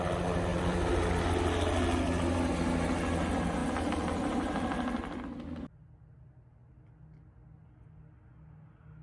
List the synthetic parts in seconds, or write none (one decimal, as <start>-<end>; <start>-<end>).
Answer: 0.5-1.1; 3.6-5.2